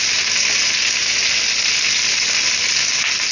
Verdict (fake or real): real